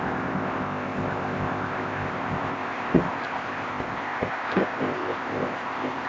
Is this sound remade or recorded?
remade